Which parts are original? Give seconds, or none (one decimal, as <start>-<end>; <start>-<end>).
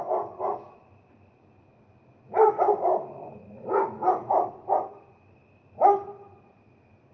0.0-7.1